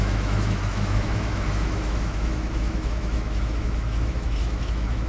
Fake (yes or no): yes